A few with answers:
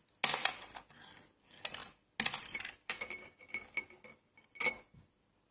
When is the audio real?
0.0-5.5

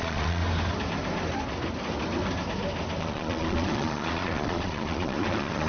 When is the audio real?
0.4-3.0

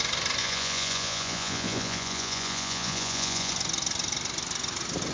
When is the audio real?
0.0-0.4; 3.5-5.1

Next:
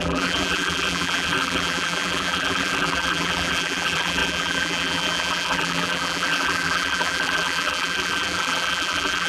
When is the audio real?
none

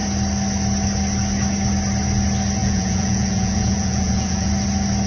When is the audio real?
0.0-2.6; 4.5-5.1

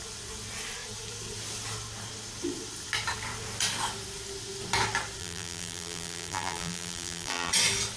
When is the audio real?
0.0-5.2; 7.5-8.0

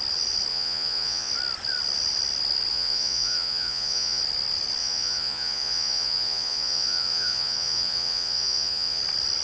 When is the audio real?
0.0-0.5; 1.3-2.7; 4.2-4.8; 9.0-9.4

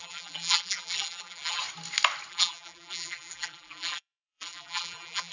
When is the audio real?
1.6-2.3